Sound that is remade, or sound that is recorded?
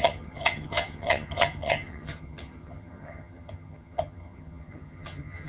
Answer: remade